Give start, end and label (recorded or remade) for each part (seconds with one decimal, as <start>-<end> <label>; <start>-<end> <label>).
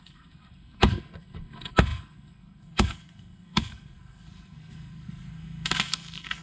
0.0-6.4 remade